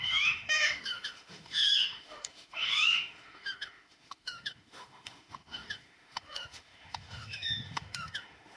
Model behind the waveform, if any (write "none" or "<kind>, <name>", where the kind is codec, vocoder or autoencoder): autoencoder, DAC-VAE